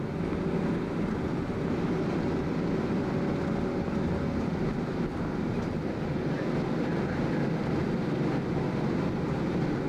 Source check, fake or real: real